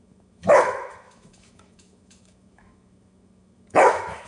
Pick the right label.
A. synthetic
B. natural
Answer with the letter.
A